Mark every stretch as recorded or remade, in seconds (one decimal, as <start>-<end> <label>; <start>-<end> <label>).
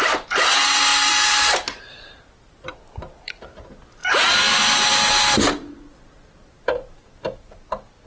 0.0-8.1 recorded